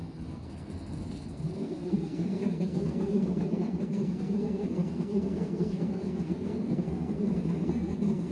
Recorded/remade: remade